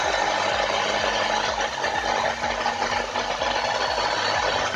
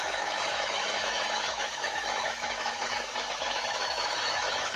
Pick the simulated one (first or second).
second